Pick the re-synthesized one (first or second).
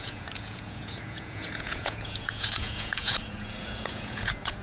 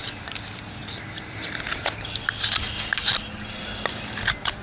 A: first